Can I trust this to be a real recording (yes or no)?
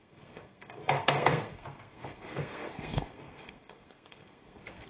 no